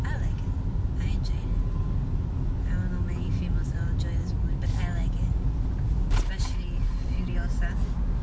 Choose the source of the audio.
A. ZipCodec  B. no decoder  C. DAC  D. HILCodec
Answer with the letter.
B